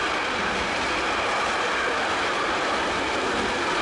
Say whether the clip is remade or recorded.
recorded